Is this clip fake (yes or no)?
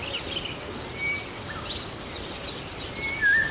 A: no